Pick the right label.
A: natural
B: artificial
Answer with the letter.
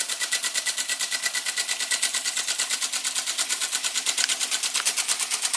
A